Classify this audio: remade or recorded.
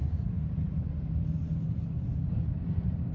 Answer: recorded